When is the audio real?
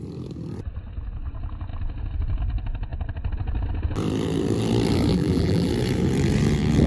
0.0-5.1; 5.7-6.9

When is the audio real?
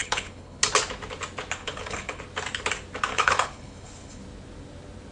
0.6-1.6; 2.2-3.1; 4.2-5.1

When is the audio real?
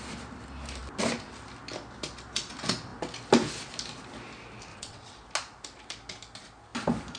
0.0-4.7; 5.2-7.2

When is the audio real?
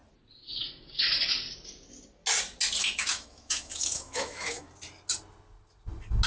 0.0-2.8; 4.7-6.3